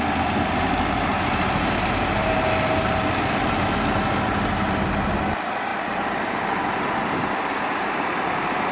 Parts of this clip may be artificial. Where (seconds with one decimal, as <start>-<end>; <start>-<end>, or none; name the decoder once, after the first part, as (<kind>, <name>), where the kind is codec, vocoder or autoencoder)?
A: 1.1-5.1 (vocoder, BigVGAN v2); 5.7-7.0